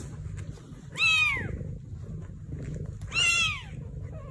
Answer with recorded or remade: recorded